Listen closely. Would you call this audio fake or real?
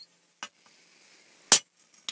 real